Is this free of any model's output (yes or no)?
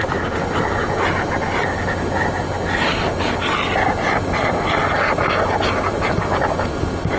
yes